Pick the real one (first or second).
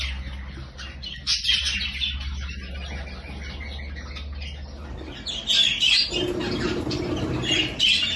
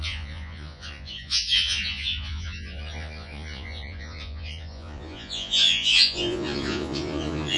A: first